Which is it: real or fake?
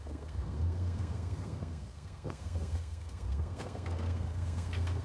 fake